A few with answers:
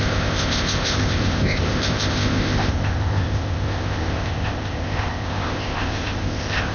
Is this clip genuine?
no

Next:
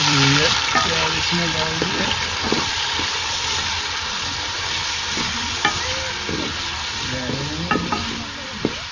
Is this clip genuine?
no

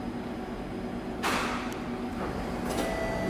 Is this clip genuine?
yes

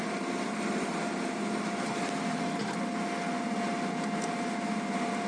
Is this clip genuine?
yes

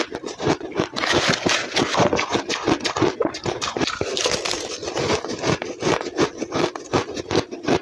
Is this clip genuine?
yes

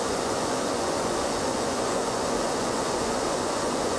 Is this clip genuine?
no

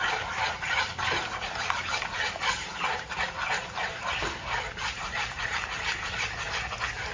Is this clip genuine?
no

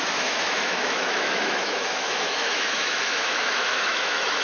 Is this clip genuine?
no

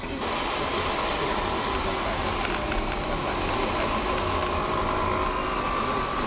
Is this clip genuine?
yes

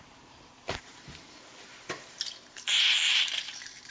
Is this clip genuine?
no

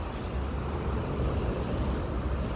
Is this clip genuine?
yes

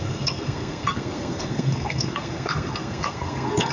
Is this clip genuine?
no